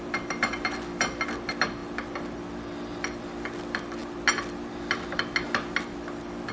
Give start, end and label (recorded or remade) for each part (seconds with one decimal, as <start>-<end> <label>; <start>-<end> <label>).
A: 0.0-6.5 recorded